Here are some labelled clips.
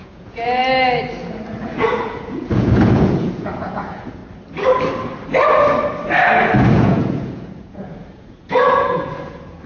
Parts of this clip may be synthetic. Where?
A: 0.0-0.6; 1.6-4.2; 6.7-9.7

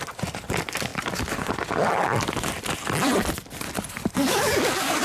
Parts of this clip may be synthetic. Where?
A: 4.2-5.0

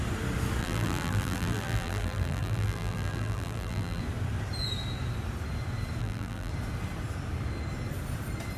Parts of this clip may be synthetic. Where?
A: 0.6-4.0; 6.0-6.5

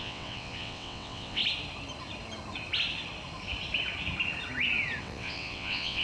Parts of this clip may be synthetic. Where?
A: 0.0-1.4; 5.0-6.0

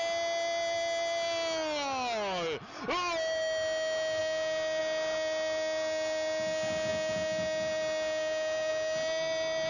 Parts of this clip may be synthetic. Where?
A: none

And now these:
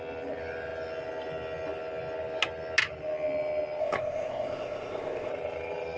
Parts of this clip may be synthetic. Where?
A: 3.8-5.3

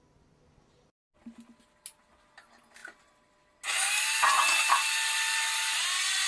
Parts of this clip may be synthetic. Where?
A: none

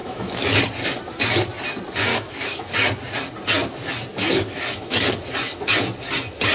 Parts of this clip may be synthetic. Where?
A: 0.0-0.6; 2.1-2.7; 4.1-5.0